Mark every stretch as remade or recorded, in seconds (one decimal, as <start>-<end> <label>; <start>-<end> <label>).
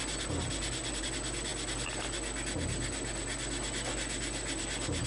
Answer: 0.0-5.1 recorded